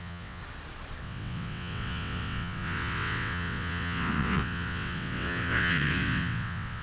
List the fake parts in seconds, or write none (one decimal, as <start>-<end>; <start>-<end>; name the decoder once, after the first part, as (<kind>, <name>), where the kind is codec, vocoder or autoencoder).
0.0-0.4 (vocoder, WaveNeXt); 1.0-6.8